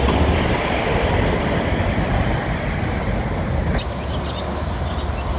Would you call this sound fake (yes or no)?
no